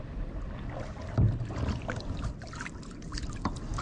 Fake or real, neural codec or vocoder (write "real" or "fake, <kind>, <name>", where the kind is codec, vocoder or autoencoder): real